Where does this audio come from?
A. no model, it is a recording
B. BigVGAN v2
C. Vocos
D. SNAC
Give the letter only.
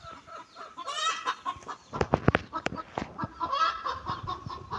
B